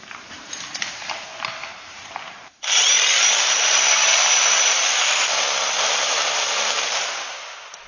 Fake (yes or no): yes